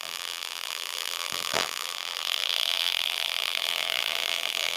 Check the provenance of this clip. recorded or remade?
remade